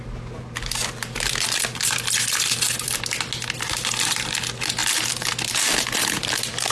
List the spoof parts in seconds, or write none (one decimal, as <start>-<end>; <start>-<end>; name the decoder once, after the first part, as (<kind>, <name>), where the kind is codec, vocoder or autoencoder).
none